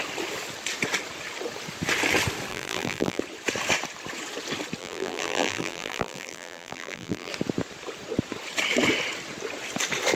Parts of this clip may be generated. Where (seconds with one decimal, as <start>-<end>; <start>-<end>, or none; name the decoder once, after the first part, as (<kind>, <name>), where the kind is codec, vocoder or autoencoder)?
2.5-3.2 (vocoder, BigVGAN v2); 4.8-7.3